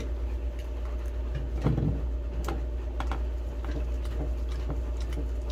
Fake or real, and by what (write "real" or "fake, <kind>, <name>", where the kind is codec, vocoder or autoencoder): real